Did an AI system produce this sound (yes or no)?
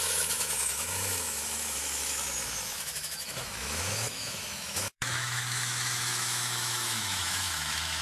yes